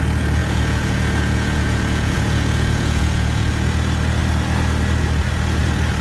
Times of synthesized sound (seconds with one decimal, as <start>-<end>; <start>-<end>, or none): 0.4-3.5